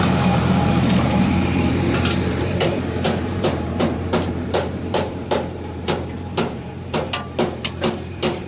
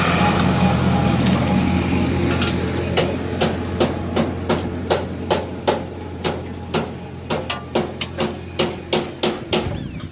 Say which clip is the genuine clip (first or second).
second